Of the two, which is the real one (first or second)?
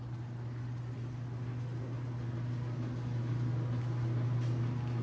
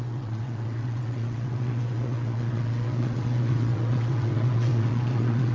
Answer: first